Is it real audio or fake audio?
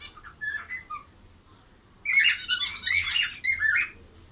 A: real